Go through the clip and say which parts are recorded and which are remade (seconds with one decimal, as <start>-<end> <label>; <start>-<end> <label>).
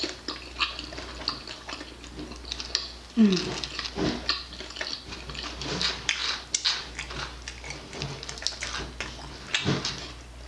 0.0-10.5 recorded